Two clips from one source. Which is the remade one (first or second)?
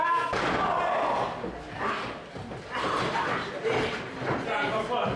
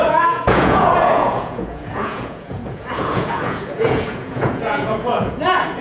second